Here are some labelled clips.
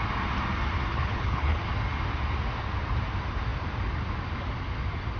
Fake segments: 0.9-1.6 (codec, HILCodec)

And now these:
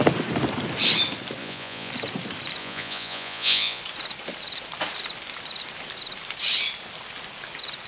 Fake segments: 1.4-1.9 (vocoder, Vocos); 2.6-3.8

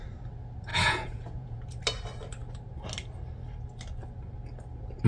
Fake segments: 0.7-1.6 (vocoder, Vocos)

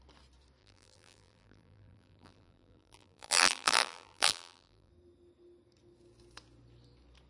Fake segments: 0.6-4.9 (vocoder, BigVGAN v2)

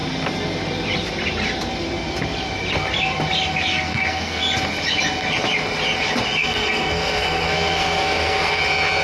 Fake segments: 3.7-4.4 (codec, SNAC); 6.4-8.6

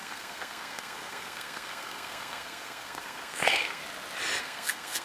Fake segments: 0.0-3.8 (codec, SNAC); 4.4-5.0

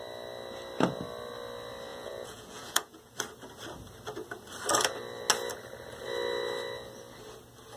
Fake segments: 1.9-3.1 (vocoder, Vocos)